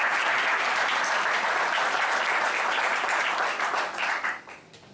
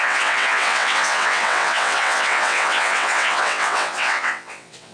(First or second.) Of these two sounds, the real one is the first